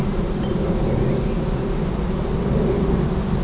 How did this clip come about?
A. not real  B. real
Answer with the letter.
B